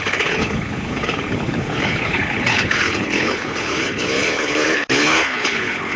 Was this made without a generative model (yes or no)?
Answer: no